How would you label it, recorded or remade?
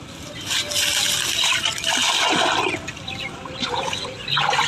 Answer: recorded